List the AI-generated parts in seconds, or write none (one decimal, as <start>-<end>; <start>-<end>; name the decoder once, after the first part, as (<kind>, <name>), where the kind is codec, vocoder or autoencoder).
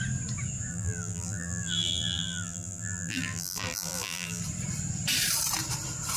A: 0.7-4.4 (vocoder, BigVGAN v2)